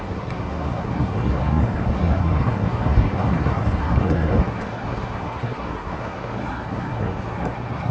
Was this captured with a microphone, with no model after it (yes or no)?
no